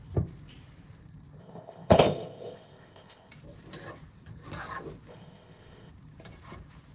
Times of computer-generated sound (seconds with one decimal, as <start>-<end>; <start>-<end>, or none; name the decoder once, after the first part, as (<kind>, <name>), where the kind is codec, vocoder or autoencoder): 1.4-3.3 (codec, ZipCodec); 5.1-5.9